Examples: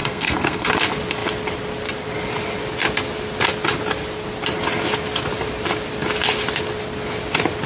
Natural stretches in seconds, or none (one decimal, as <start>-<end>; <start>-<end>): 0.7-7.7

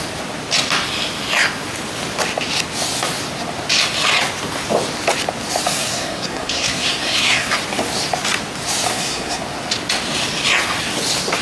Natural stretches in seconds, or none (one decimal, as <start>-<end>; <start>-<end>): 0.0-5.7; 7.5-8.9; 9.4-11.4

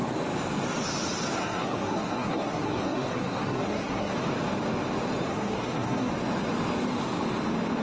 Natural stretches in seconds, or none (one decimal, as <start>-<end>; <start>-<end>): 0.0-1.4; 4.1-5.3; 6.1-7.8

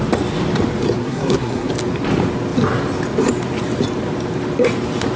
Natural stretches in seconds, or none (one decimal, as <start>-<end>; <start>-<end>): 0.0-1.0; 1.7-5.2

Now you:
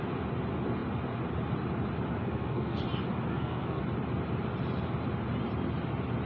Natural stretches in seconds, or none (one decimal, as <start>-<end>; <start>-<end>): 0.0-2.1; 2.8-3.3; 3.8-6.3

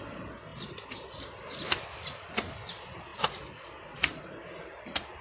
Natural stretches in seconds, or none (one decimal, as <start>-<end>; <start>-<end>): 0.0-5.2

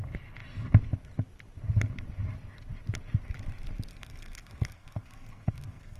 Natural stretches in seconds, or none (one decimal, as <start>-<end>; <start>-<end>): 0.0-3.9

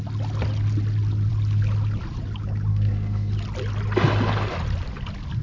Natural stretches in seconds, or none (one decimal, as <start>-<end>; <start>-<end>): 0.0-2.7; 3.3-5.4